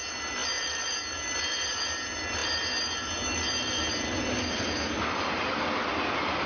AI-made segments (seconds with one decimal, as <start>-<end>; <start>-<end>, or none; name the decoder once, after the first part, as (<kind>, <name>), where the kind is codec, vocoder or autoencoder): none